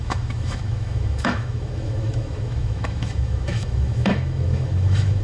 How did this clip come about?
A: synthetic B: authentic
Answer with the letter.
A